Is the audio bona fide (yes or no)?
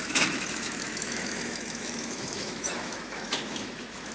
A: no